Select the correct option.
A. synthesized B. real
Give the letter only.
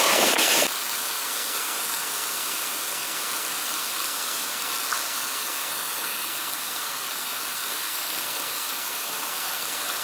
A